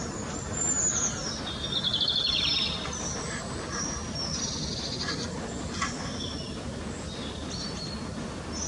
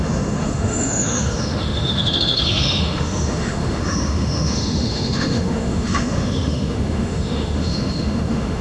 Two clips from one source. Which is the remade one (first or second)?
second